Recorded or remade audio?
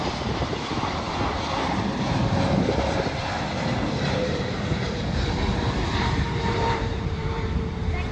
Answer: remade